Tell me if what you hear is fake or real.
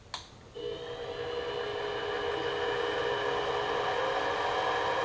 real